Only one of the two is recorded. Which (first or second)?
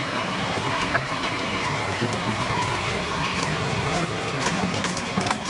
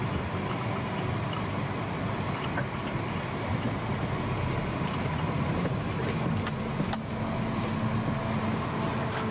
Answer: second